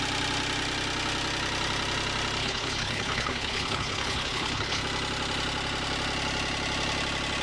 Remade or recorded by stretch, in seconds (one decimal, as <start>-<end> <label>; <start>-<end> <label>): 0.0-2.4 recorded; 2.4-4.8 remade; 4.8-7.4 recorded